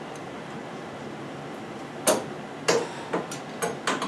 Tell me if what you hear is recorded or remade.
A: recorded